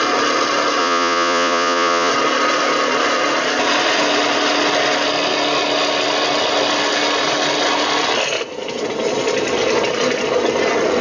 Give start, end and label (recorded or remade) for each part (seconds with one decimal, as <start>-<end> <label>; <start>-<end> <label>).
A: 0.0-0.8 recorded; 0.8-2.1 remade; 2.1-11.0 recorded

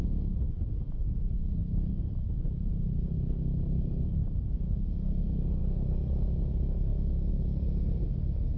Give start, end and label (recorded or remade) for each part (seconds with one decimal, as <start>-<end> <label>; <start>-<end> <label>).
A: 0.0-1.6 recorded; 1.6-2.7 remade; 2.7-5.6 recorded; 5.6-6.3 remade; 6.3-8.6 recorded

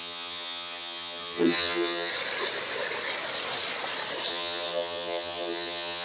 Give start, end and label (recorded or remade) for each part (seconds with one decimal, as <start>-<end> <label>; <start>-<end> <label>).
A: 0.0-2.1 remade; 2.1-4.3 recorded; 4.3-6.0 remade